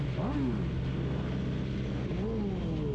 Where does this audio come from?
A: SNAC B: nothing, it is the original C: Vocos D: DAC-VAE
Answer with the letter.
B